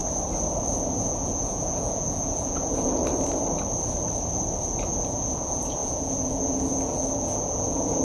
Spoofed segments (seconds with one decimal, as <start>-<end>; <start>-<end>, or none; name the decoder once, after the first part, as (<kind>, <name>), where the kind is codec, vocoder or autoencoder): 0.9-3.0 (vocoder, Vocos); 4.9-8.0